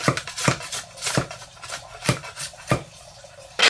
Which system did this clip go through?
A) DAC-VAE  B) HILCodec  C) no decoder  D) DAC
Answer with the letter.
C